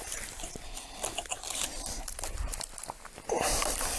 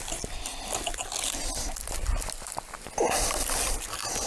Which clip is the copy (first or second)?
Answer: first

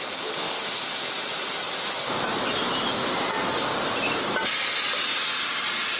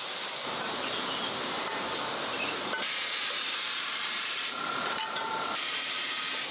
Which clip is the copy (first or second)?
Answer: second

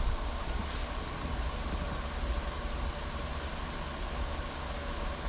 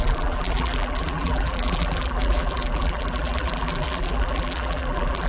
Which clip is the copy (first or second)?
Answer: second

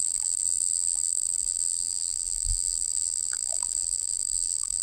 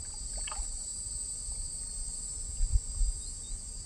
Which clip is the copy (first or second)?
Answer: first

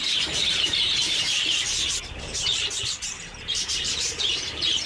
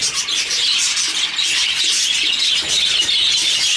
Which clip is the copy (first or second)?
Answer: first